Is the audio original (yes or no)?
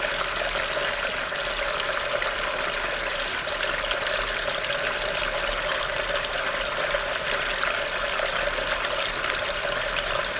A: yes